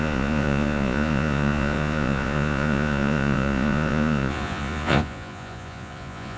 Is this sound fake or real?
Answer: fake